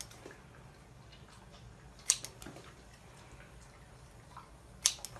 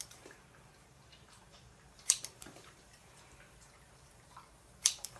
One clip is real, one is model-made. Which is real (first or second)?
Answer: first